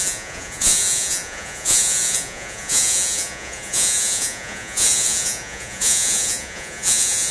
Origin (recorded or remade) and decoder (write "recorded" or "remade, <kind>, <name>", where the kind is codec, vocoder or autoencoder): remade, vocoder, Vocos